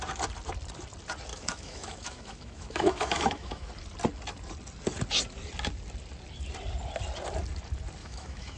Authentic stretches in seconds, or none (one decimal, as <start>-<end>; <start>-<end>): 0.0-1.3; 3.7-8.0